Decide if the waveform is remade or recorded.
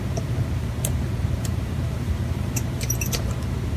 remade